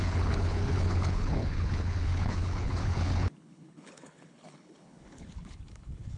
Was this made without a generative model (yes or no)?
no